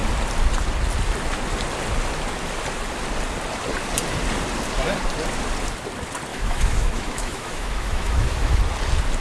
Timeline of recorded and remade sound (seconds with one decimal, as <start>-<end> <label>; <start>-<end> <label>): 0.0-6.3 recorded; 6.3-8.6 remade; 8.6-9.2 recorded